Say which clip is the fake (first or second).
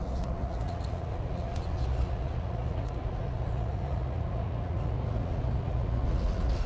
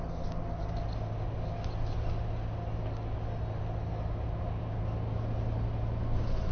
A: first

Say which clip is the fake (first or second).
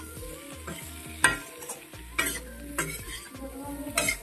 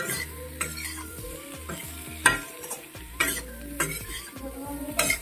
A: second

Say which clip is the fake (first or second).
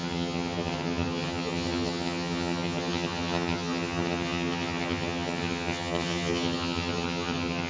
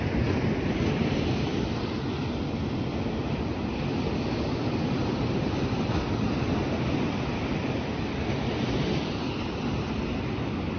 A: first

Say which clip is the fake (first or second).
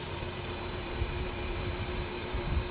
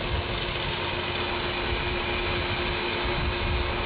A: first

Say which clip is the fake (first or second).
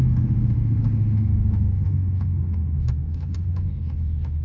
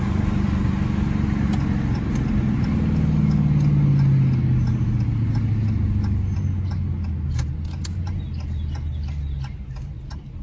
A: first